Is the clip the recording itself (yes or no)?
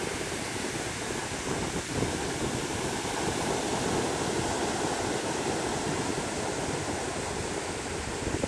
yes